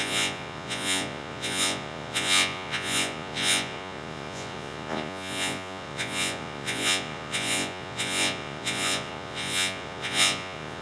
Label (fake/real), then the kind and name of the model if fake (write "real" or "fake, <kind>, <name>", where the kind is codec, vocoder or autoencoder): fake, vocoder, Vocos